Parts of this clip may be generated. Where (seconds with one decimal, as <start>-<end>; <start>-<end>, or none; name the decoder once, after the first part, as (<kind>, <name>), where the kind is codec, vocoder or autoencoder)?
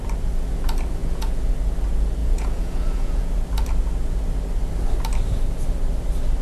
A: 1.0-1.5 (vocoder, Vocos); 2.2-3.4